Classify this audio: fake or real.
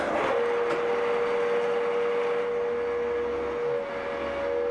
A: real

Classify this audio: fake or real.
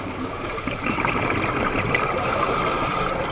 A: fake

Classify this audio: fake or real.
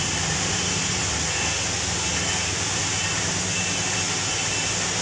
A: real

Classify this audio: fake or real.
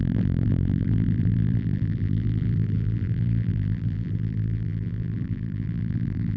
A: fake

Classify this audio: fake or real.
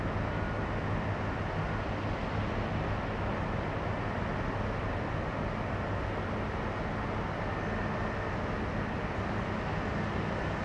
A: real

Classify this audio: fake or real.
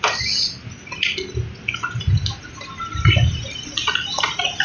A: real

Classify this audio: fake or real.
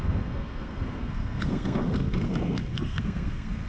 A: fake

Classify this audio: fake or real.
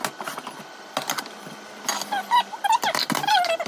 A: real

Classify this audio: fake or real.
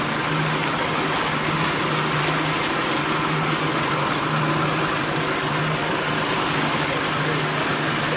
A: real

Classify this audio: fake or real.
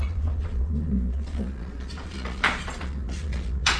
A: fake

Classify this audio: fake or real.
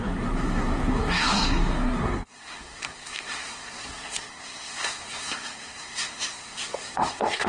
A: fake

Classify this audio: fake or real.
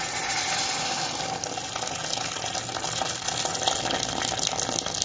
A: real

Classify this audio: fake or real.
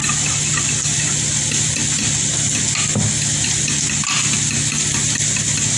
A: real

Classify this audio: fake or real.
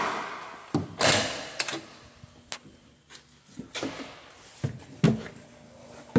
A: real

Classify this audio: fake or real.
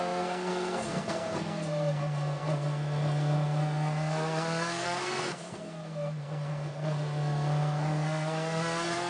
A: fake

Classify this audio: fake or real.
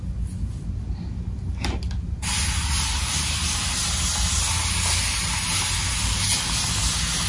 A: real